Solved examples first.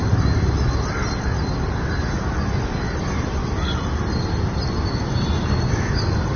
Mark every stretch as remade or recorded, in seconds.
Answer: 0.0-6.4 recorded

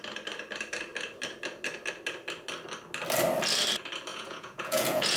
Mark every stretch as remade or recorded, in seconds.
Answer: 0.0-4.1 recorded; 4.1-5.2 remade

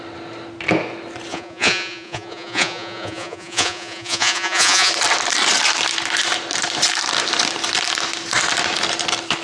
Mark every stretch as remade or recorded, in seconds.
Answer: 0.0-1.3 recorded; 1.3-4.9 remade; 4.9-9.4 recorded

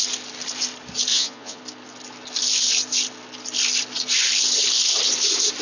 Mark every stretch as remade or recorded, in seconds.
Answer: 0.0-1.1 recorded; 1.1-1.6 remade; 1.6-5.6 recorded